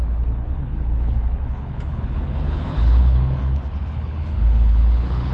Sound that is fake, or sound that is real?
fake